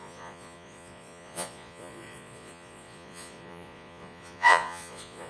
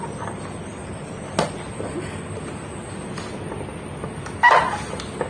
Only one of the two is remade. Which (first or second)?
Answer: first